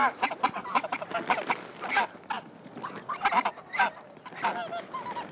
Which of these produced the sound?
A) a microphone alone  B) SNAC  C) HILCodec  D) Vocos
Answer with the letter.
A